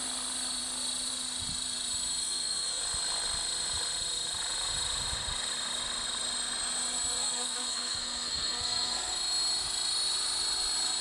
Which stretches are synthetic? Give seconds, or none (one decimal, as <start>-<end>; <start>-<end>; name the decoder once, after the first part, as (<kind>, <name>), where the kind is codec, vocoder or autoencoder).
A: 2.2-2.8 (codec, SNAC); 7.2-9.1